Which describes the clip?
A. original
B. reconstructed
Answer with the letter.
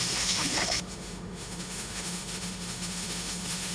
B